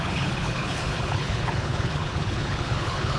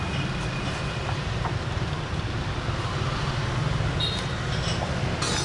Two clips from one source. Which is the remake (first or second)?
first